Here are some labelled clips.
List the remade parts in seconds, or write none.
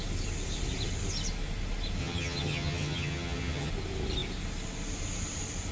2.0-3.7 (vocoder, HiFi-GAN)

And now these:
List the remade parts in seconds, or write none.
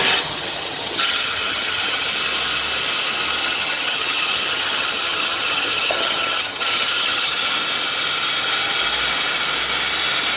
0.0-2.1 (vocoder, HiFi-GAN); 3.4-7.5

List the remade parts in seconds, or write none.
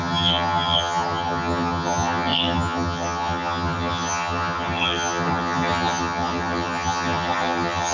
0.0-7.9 (vocoder, HiFi-GAN)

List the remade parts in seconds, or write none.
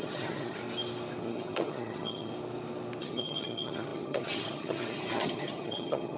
0.0-0.6 (vocoder, HiFi-GAN); 1.2-2.3; 3.0-6.2